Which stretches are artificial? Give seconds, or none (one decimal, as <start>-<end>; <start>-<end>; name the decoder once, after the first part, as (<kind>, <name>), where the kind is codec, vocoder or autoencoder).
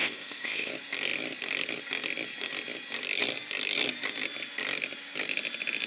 0.0-0.7 (codec, ZipCodec)